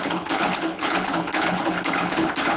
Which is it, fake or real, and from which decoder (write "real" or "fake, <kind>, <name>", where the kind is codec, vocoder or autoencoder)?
fake, codec, HILCodec